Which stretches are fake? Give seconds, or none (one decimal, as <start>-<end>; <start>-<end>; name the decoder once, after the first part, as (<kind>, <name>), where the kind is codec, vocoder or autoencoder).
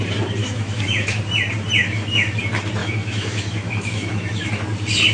0.4-1.2 (autoencoder, DAC-VAE); 1.8-2.4; 2.8-4.5